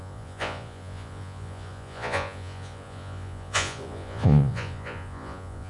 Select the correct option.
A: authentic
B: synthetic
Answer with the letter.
B